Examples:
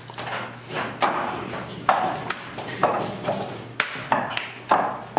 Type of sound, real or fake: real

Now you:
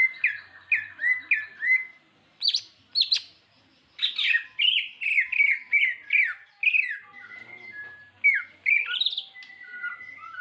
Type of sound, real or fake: real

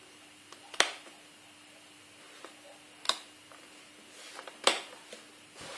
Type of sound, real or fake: real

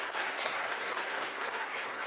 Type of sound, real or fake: fake